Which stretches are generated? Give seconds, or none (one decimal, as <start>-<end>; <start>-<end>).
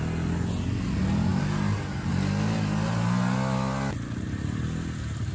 none